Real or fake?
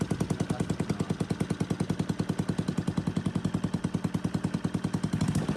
real